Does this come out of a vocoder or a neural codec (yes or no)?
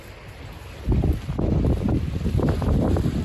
no